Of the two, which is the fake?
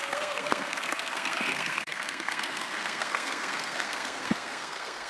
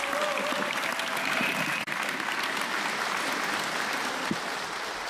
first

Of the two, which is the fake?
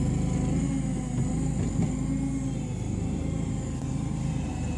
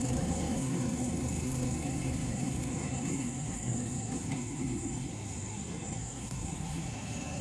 second